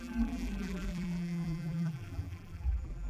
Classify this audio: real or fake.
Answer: fake